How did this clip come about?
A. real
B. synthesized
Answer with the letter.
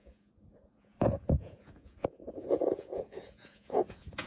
B